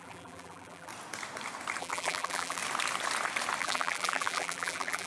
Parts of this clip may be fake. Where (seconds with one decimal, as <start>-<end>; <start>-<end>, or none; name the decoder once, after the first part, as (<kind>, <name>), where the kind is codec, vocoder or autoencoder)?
0.0-0.9 (vocoder, BigVGAN v2); 1.8-2.6; 3.6-5.1